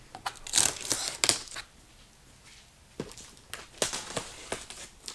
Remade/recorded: recorded